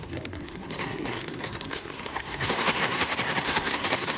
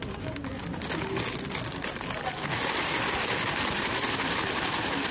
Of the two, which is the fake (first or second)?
first